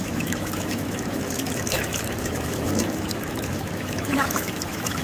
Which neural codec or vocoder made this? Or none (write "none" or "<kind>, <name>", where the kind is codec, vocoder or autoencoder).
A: autoencoder, DAC-VAE